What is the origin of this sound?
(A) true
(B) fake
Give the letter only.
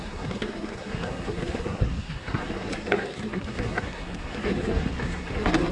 B